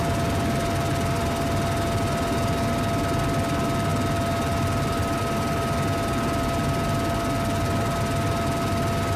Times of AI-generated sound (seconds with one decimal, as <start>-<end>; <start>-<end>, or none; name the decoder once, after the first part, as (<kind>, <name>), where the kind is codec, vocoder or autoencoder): none